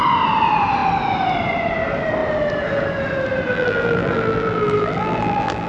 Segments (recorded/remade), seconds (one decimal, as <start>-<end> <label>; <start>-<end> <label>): 0.0-3.5 recorded; 3.5-5.7 remade